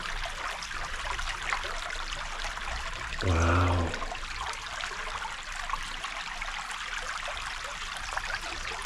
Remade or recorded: recorded